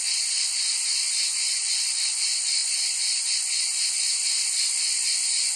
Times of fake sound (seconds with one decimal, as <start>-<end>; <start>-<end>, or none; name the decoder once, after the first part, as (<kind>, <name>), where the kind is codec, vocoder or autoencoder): none